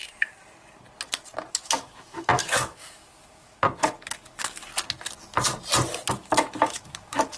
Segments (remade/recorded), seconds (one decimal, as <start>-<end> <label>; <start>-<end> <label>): 0.0-1.5 recorded; 1.5-4.7 remade; 4.7-6.1 recorded; 6.1-7.4 remade